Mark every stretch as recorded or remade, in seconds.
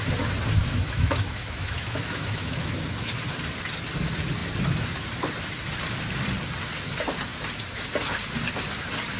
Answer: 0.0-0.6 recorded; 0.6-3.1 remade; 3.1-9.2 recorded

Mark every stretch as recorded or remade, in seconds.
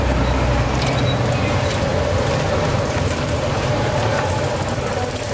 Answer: 0.0-1.9 remade; 1.9-2.9 recorded; 2.9-4.0 remade; 4.0-5.3 recorded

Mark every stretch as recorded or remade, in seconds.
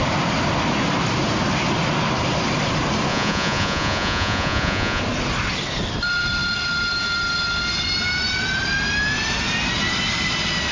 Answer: 0.0-3.1 recorded; 3.1-5.0 remade; 5.0-10.7 recorded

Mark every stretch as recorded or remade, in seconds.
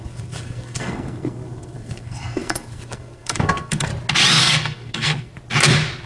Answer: 0.0-3.9 remade; 3.9-4.4 recorded; 4.4-5.3 remade; 5.3-6.1 recorded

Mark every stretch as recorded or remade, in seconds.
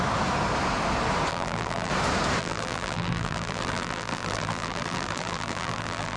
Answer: 0.0-1.3 recorded; 1.3-1.9 remade; 1.9-2.4 recorded; 2.4-6.2 remade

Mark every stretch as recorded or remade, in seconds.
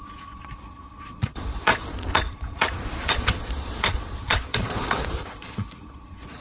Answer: 0.0-6.4 remade